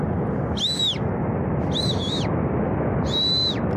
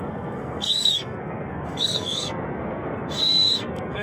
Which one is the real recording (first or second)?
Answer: first